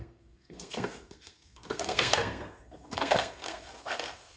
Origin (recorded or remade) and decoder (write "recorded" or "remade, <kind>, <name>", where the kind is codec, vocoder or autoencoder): remade, codec, SNAC